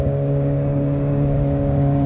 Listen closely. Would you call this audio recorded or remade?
remade